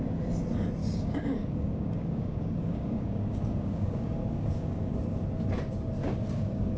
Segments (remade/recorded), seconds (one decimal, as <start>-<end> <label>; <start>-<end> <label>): 0.0-0.8 recorded; 0.8-4.9 remade; 4.9-6.0 recorded; 6.0-6.8 remade